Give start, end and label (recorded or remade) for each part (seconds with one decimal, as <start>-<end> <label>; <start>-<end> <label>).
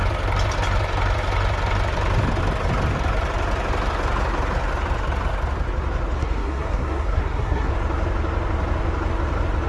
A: 0.0-6.2 recorded; 6.2-7.7 remade; 7.7-9.7 recorded